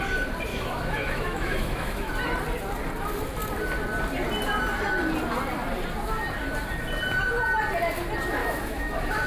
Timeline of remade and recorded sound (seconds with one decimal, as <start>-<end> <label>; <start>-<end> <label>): 0.0-0.5 recorded; 0.5-2.1 remade; 2.1-8.4 recorded; 8.4-9.3 remade